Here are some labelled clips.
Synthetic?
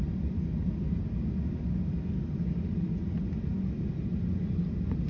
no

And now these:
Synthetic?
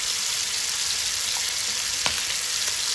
no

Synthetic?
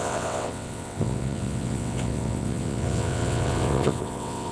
yes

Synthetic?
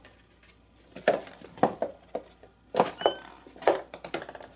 no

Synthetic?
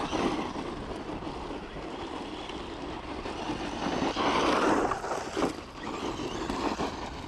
no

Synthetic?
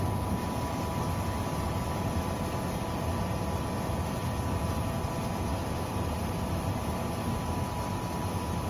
no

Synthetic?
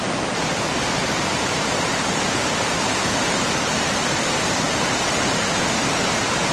yes